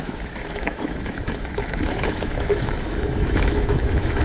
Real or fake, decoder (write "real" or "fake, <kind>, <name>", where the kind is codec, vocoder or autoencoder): fake, autoencoder, DAC-VAE